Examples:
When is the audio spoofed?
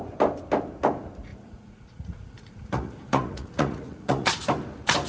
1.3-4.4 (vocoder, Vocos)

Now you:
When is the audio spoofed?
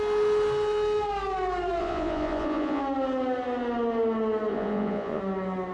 1.8-2.8 (vocoder, Vocos); 4.5-5.2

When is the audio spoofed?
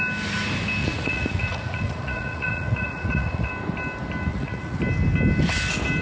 0.8-3.5 (vocoder, Vocos); 4.3-4.8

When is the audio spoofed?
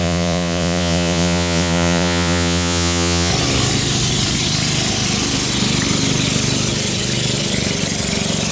0.0-3.3 (vocoder, Vocos)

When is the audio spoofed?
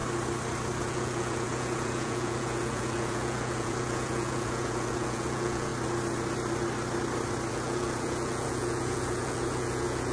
0.8-5.7 (vocoder, Vocos); 7.5-10.1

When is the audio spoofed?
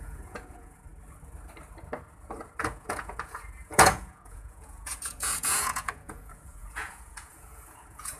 0.0-0.9 (vocoder, Vocos); 2.6-8.2